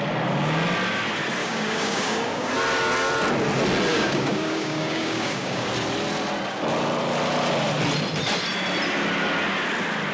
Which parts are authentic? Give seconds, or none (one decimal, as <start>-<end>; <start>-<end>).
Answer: 0.0-1.4; 2.5-3.9; 5.7-10.1